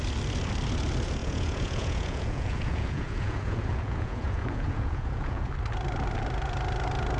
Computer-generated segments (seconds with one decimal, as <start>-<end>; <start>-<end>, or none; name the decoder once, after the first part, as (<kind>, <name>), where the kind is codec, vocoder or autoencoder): 1.2-5.5 (vocoder, Vocos)